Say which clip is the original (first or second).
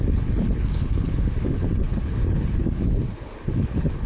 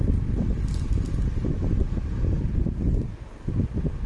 second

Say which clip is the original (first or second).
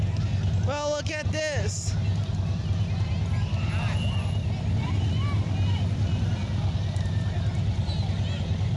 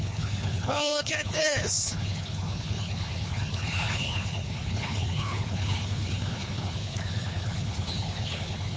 first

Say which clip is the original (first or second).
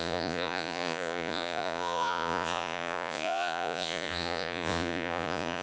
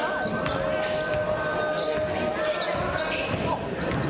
second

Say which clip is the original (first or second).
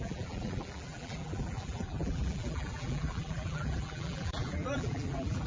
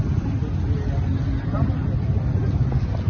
second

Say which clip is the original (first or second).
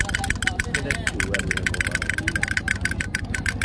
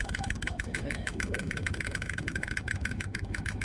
first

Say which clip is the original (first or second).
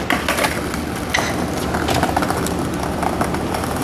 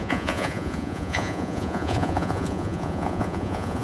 first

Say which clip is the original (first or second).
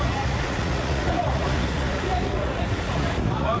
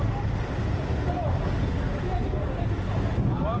second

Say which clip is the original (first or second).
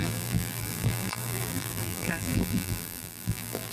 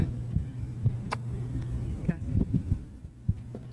second